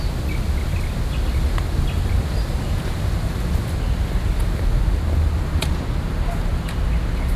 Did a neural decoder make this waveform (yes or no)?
no